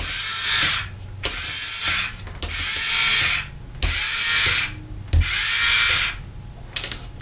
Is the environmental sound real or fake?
real